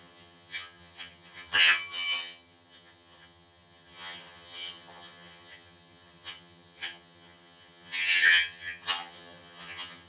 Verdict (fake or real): fake